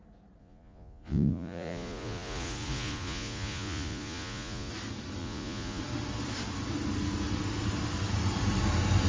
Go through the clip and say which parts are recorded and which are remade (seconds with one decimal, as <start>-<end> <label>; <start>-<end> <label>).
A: 0.0-0.4 recorded; 0.4-4.7 remade; 4.7-5.2 recorded; 5.2-5.8 remade; 5.8-9.1 recorded